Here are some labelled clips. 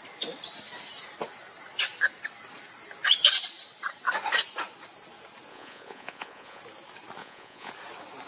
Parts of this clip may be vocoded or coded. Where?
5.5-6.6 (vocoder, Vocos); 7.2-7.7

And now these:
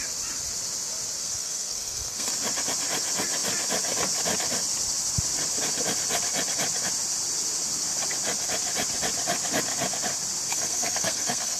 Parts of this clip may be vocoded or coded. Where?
1.2-2.3 (codec, SNAC); 10.5-11.6

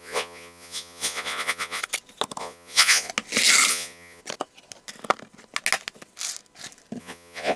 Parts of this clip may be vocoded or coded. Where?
0.0-1.8 (vocoder, Vocos); 2.4-3.1; 3.7-4.2; 7.0-7.6

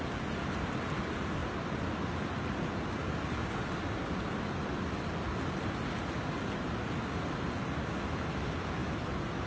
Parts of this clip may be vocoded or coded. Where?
none

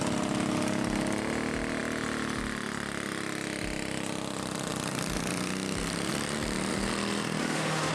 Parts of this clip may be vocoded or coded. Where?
7.4-7.9 (autoencoder, DAC-VAE)